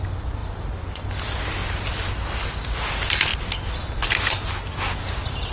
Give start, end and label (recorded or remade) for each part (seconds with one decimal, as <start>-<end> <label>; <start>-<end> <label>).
0.0-0.4 recorded; 0.4-1.1 remade; 1.1-5.5 recorded